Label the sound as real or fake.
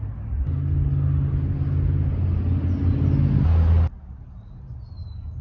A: real